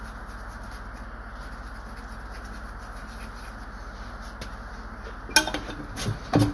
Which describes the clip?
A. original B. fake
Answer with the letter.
A